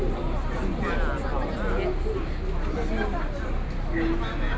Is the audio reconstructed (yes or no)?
no